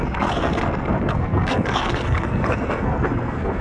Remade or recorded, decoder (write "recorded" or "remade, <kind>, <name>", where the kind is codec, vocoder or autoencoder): remade, codec, SNAC